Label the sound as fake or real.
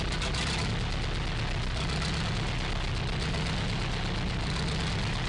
real